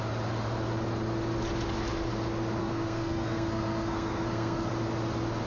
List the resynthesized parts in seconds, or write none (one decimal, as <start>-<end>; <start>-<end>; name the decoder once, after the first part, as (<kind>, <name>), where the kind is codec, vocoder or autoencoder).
2.6-4.7 (codec, SNAC)